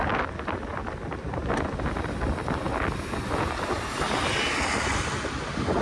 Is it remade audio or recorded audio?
recorded